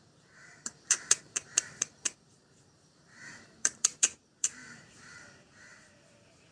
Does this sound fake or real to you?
fake